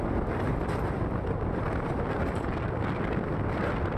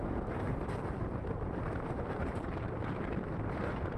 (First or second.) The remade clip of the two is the second